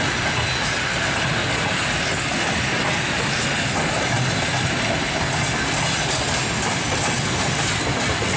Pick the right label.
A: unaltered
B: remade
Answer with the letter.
A